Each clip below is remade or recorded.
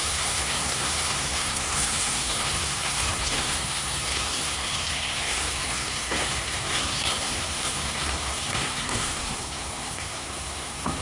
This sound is remade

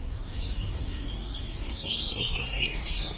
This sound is remade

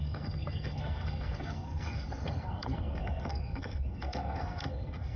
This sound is remade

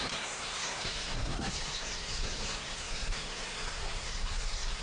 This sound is remade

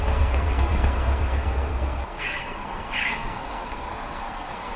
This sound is remade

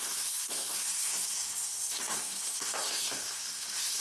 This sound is remade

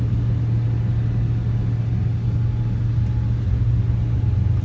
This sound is recorded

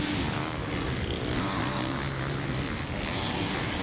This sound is recorded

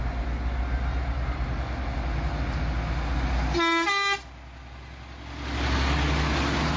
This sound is recorded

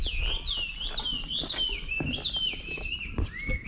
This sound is recorded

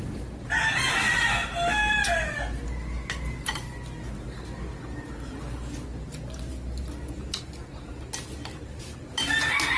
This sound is recorded